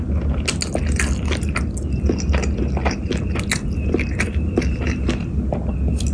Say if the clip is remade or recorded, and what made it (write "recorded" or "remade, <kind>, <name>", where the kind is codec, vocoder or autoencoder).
recorded